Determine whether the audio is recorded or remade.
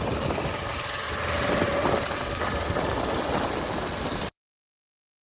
remade